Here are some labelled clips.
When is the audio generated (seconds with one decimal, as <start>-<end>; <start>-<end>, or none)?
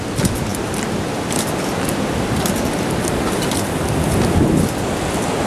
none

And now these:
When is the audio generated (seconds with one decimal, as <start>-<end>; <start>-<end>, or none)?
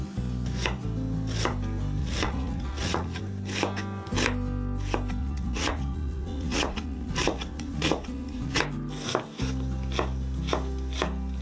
2.0-3.2; 5.2-8.6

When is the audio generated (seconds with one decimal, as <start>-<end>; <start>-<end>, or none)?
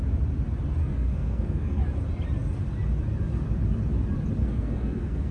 0.8-1.8; 4.4-5.3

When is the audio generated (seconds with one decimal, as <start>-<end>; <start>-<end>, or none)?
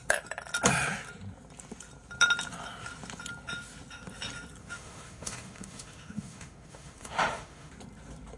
4.6-7.7